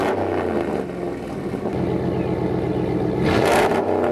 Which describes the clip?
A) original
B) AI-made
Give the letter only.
A